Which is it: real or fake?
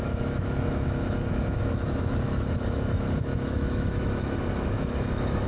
fake